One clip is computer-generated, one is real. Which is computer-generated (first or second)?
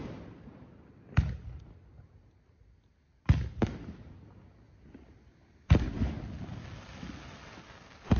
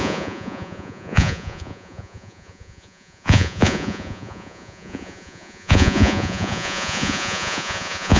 second